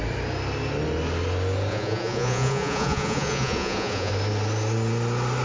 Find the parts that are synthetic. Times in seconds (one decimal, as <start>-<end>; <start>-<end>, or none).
1.7-4.1